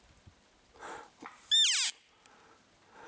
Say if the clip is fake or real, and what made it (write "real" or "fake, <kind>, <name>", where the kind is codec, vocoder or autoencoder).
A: real